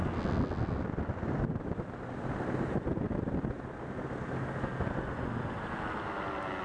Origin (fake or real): real